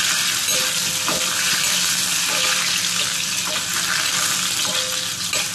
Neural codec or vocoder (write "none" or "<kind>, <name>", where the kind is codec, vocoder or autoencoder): none